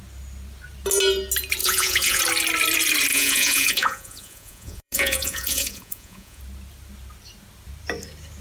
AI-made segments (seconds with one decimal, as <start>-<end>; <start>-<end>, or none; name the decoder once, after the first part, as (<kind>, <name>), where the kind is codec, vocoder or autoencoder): 1.6-2.2 (vocoder, Vocos); 3.1-6.4